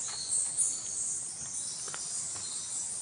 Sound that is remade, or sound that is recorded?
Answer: recorded